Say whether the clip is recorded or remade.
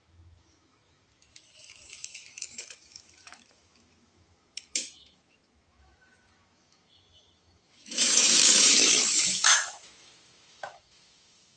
remade